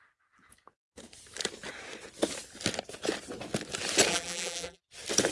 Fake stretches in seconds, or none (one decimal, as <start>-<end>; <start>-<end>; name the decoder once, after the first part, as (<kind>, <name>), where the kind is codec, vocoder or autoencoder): 4.1-4.8 (vocoder, BigVGAN v2)

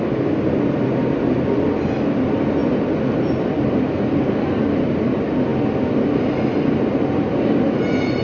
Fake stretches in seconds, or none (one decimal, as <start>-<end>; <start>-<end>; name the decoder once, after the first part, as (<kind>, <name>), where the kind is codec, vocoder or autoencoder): none

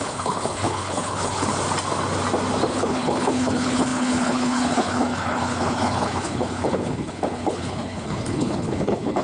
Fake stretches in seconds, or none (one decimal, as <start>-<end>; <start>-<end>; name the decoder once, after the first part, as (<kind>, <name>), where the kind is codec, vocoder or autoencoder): 0.0-1.5 (codec, HILCodec); 2.7-9.2

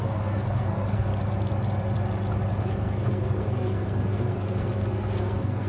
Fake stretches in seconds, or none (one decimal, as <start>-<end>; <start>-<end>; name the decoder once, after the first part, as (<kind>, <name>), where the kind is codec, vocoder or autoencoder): 0.0-1.1 (codec, SNAC); 2.6-5.7

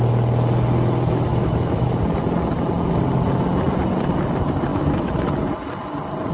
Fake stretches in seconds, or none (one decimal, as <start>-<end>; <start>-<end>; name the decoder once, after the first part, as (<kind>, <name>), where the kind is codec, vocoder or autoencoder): 1.3-2.0 (autoencoder, DAC-VAE); 4.7-5.3

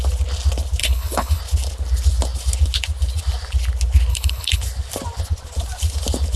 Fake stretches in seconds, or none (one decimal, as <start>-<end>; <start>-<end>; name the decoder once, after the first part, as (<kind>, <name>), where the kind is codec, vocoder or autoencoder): 0.8-1.4 (codec, HILCodec); 4.1-4.6